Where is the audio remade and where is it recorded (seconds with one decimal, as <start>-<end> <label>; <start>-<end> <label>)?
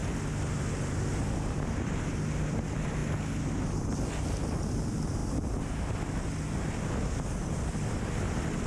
0.0-0.7 recorded; 0.7-3.0 remade; 3.0-4.1 recorded; 4.1-5.2 remade; 5.2-7.4 recorded; 7.4-8.7 remade